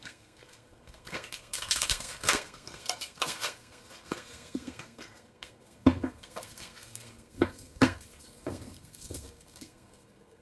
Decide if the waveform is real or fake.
fake